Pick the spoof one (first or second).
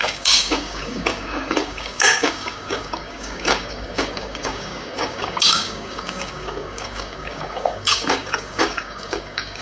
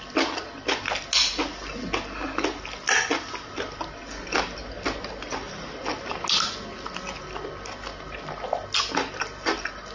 first